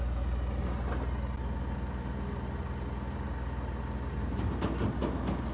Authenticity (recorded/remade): recorded